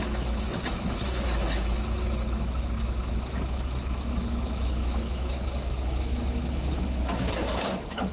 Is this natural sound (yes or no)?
no